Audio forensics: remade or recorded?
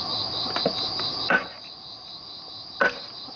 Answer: recorded